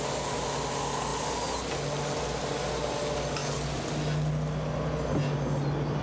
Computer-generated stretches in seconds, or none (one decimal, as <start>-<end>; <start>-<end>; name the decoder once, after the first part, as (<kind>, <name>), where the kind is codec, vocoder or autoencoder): none